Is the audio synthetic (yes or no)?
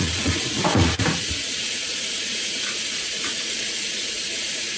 yes